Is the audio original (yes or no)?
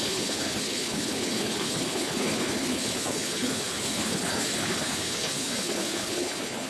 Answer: no